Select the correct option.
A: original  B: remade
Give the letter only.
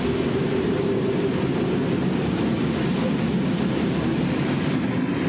A